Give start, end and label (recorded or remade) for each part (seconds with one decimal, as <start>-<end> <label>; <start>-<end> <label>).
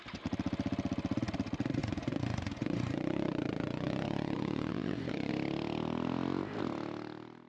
0.0-1.8 recorded; 1.8-5.3 remade; 5.3-7.5 recorded